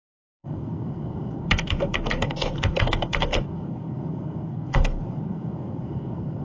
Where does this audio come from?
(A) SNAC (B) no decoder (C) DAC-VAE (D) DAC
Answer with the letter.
A